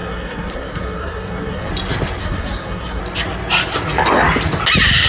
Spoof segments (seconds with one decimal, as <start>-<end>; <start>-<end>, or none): 0.0-1.7; 2.2-3.0